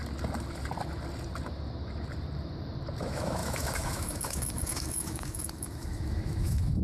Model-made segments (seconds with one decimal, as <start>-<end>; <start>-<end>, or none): 3.0-6.8